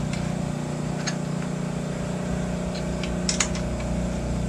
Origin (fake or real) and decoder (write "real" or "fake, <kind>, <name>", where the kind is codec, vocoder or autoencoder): real